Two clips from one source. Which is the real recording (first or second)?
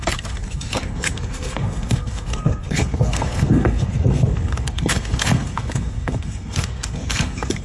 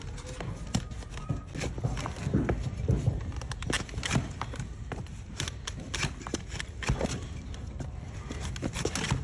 second